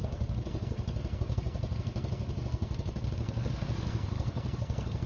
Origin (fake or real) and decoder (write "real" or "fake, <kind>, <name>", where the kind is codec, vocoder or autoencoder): fake, codec, SNAC